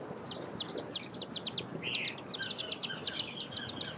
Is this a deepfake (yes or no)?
no